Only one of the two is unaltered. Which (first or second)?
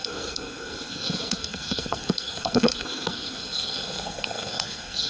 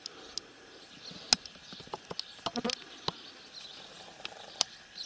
second